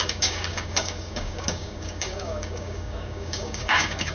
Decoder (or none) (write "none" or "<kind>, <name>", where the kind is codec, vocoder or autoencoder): codec, DAC